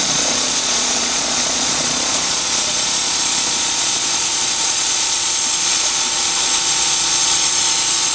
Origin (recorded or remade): remade